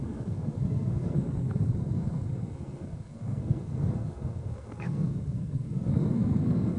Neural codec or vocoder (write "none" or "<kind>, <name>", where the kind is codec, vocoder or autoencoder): codec, SNAC